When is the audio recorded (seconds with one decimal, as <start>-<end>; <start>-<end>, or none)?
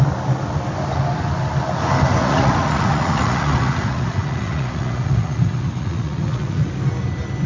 0.0-2.2; 6.7-7.5